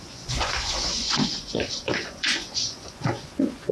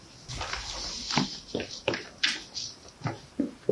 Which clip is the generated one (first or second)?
first